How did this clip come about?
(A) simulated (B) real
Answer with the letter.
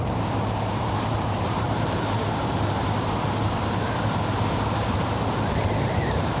A